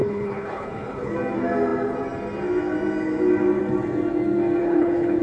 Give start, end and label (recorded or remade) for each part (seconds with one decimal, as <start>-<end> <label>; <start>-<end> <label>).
0.0-1.1 remade; 1.1-4.6 recorded; 4.6-5.2 remade